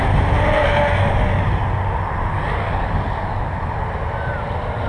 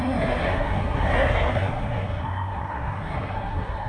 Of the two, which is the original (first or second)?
first